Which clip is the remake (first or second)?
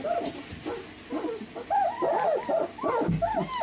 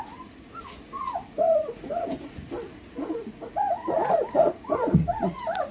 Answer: second